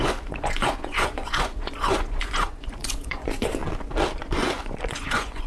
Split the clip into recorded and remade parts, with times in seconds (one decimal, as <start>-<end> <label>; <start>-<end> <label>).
0.0-3.6 remade; 3.6-4.2 recorded; 4.2-5.5 remade